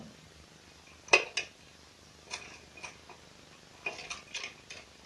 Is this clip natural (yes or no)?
yes